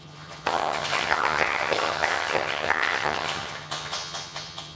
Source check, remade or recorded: remade